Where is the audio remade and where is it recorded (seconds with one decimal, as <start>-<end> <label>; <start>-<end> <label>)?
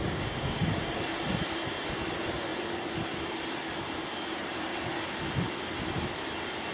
0.0-1.0 remade; 1.0-6.7 recorded